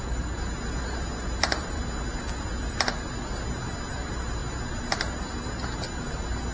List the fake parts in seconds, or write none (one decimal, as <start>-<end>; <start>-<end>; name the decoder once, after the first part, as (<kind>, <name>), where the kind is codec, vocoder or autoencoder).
none